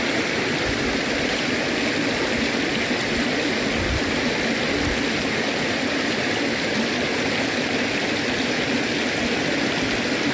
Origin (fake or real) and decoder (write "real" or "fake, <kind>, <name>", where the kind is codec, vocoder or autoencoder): real